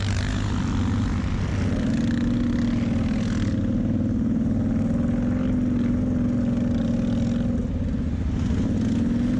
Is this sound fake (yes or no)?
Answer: no